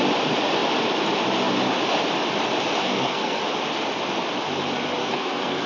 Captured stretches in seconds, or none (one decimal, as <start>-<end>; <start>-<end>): 0.0-2.8; 3.4-5.0